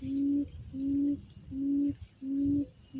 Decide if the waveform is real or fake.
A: real